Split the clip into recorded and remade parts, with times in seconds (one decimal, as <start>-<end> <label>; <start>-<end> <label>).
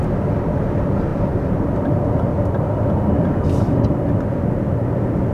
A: 0.0-1.1 recorded; 1.1-4.3 remade; 4.3-5.3 recorded